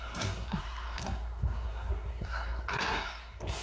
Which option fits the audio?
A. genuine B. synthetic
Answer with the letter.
B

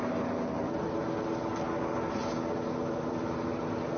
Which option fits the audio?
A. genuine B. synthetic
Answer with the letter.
A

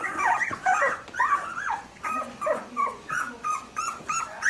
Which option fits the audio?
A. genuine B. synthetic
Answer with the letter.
B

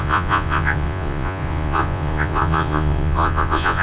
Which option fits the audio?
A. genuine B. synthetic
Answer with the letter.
B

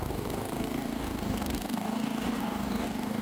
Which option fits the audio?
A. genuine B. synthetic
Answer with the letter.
B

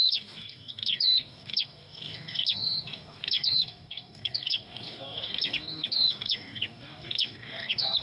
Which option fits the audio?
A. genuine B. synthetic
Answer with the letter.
B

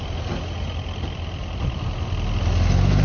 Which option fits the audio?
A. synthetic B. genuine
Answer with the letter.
B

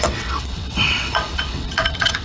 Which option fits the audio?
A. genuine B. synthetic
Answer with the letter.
B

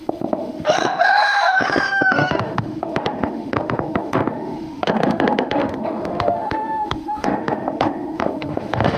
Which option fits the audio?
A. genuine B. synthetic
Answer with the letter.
B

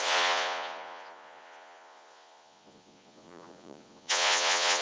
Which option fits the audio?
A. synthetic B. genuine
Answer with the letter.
A